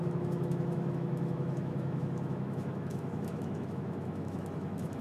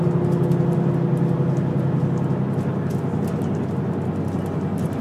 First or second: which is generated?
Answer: first